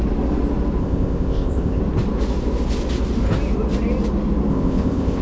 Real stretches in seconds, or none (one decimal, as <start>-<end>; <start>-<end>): 0.0-0.8; 1.8-4.5